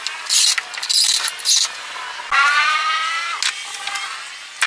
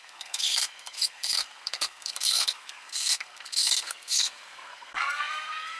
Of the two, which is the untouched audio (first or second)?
first